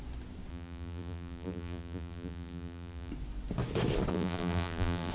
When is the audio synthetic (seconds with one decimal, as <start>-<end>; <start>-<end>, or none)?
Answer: 0.5-3.1; 4.1-5.1